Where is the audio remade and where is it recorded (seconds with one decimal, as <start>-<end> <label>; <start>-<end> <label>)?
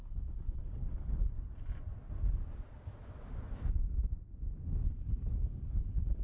0.0-1.3 remade; 1.3-4.8 recorded; 4.8-6.2 remade